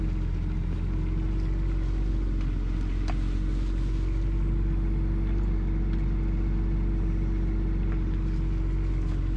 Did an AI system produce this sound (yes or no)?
no